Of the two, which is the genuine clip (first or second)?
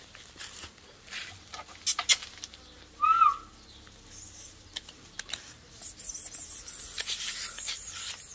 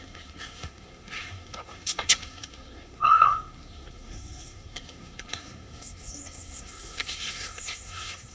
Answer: first